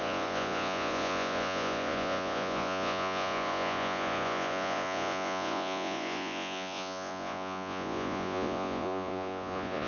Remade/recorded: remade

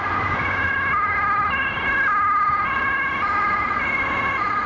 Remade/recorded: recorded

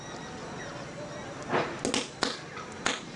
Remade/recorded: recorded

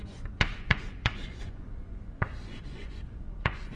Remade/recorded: remade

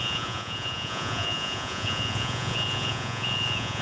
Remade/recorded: remade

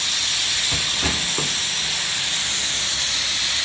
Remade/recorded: recorded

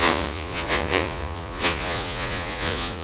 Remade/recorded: remade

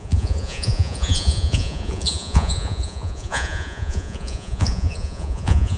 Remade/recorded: remade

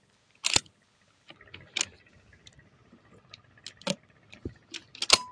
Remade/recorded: recorded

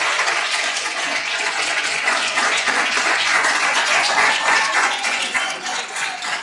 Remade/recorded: remade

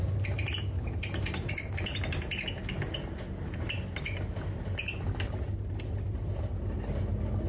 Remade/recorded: recorded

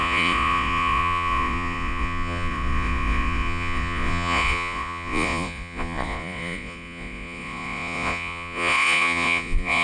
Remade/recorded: remade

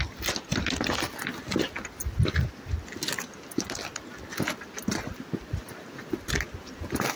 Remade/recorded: recorded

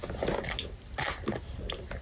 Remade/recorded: recorded